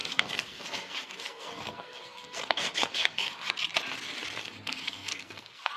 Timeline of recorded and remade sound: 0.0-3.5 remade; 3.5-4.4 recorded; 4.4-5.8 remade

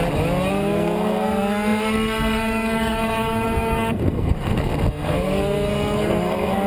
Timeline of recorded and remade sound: 0.0-0.5 recorded; 0.5-6.7 remade